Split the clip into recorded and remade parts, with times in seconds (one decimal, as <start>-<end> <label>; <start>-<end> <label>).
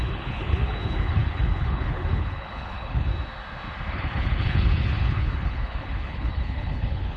0.0-3.1 remade; 3.1-3.9 recorded; 3.9-7.2 remade